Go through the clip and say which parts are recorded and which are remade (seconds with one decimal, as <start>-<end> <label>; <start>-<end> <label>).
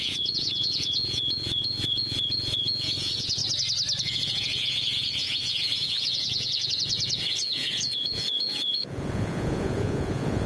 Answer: 0.0-3.4 remade; 3.4-4.0 recorded; 4.0-10.5 remade